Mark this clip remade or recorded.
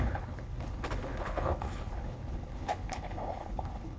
remade